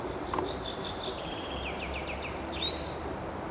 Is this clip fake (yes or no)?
yes